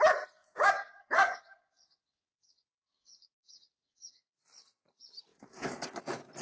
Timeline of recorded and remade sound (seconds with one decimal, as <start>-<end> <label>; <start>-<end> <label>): 0.0-0.4 recorded; 0.4-4.2 remade; 4.2-5.3 recorded; 5.3-6.0 remade; 6.0-6.4 recorded